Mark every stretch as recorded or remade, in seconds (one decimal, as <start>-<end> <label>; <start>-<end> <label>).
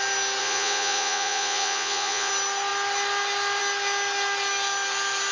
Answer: 0.0-0.4 recorded; 0.4-2.3 remade; 2.3-5.3 recorded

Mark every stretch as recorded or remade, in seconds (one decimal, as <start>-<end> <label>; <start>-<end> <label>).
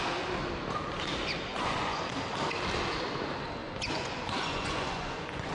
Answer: 0.0-1.5 recorded; 1.5-2.1 remade; 2.1-3.6 recorded; 3.6-5.5 remade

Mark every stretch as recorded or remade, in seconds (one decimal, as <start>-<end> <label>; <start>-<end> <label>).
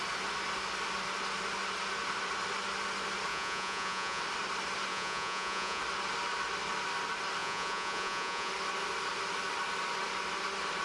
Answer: 0.0-3.3 recorded; 3.3-4.2 remade; 4.2-4.9 recorded; 4.9-5.8 remade; 5.8-7.4 recorded; 7.4-8.5 remade; 8.5-10.8 recorded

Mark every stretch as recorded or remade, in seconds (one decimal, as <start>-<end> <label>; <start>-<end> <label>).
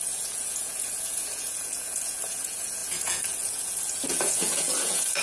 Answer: 0.0-5.2 remade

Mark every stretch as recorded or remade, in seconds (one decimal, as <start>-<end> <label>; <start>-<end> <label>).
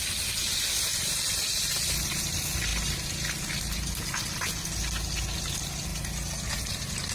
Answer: 0.0-7.1 recorded